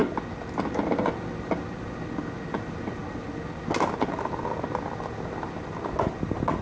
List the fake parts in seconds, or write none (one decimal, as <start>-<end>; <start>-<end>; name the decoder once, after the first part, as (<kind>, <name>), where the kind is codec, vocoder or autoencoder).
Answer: none